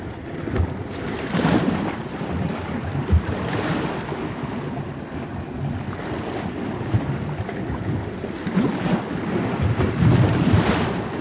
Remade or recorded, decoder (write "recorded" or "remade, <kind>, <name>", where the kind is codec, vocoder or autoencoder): recorded